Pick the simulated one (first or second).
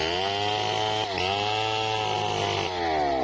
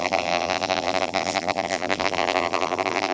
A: second